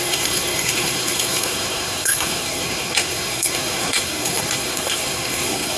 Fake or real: fake